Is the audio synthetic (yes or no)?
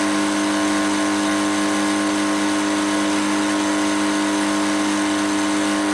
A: no